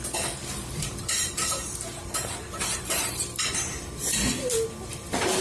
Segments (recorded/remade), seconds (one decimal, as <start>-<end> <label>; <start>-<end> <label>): 0.0-4.0 remade; 4.0-4.9 recorded; 4.9-5.4 remade